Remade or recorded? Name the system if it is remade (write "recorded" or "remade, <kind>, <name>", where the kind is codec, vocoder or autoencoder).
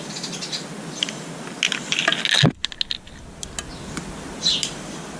recorded